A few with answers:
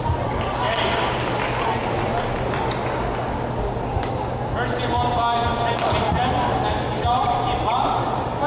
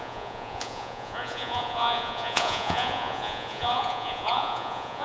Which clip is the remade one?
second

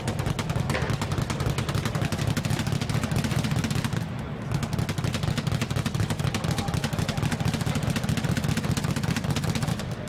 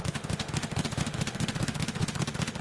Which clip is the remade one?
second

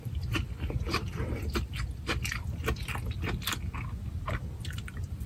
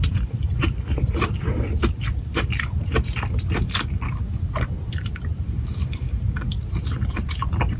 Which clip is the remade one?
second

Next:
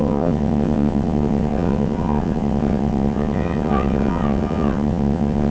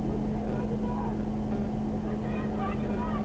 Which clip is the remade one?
first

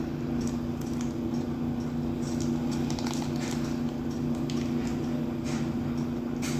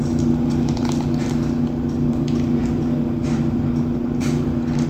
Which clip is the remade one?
second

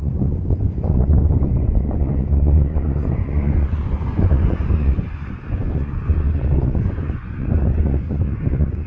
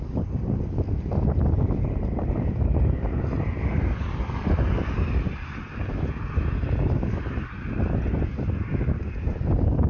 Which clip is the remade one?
first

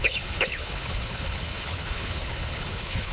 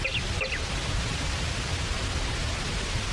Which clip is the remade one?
first